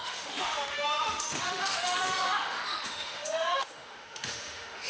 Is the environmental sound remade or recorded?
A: remade